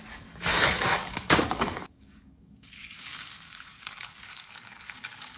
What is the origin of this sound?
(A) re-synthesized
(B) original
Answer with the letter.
A